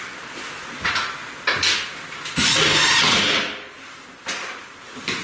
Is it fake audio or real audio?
real